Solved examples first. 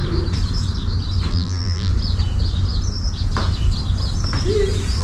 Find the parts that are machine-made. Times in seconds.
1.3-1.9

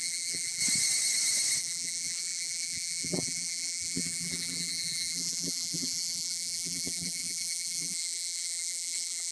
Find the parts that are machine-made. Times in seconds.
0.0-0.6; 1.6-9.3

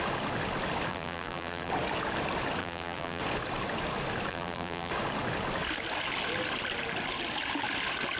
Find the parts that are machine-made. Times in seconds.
0.9-1.7; 2.6-3.2; 4.3-4.9